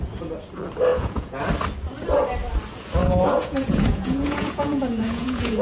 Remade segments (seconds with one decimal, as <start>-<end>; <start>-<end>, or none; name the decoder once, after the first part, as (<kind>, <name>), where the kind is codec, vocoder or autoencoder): 0.9-1.4 (vocoder, Vocos); 3.0-5.6